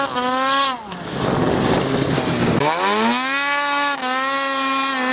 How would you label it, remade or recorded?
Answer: recorded